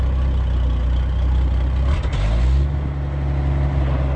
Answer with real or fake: real